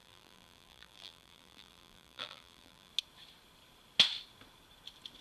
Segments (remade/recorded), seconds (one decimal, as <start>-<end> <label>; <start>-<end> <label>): 0.0-2.9 remade; 2.9-5.2 recorded